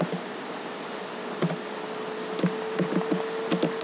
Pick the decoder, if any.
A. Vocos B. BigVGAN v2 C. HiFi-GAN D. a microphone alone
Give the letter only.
D